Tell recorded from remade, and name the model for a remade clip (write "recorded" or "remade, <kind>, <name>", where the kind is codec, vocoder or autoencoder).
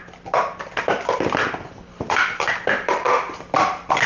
recorded